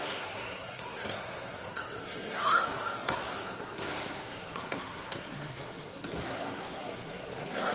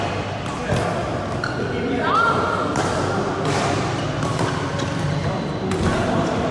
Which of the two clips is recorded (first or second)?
second